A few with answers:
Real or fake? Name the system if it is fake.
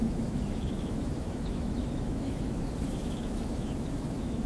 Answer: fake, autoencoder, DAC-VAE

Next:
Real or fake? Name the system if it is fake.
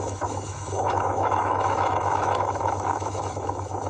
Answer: fake, autoencoder, DAC-VAE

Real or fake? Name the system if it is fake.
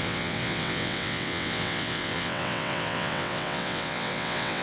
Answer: fake, vocoder, WaveNeXt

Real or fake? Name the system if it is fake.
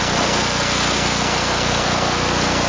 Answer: fake, codec, SNAC